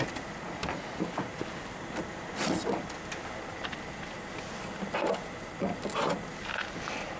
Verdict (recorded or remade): recorded